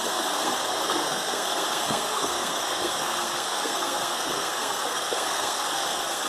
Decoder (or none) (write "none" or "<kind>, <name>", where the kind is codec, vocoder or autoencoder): codec, SNAC